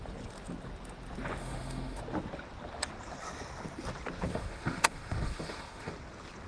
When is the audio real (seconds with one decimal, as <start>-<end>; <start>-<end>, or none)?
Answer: 0.0-1.4; 2.0-4.3; 5.9-6.5